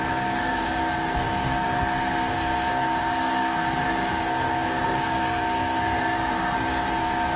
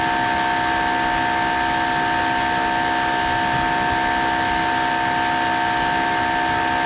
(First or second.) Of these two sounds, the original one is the second